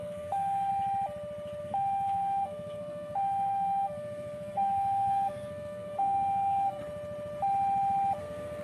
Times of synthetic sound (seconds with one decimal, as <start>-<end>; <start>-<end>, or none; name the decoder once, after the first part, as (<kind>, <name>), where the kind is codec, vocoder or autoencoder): 0.0-0.7 (codec, SNAC); 1.6-6.8; 8.2-8.6